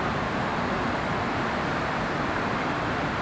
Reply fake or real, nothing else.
real